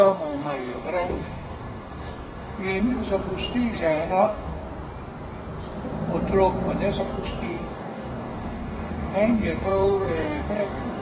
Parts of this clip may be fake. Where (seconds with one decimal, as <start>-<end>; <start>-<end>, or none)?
0.0-2.9; 3.8-4.6; 7.0-11.0